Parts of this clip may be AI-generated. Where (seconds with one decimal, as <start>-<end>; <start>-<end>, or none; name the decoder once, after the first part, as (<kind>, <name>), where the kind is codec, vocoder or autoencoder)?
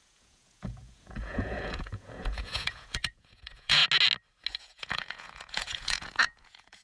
0.0-3.8 (vocoder, Vocos); 4.5-6.8